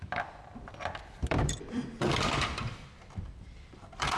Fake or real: fake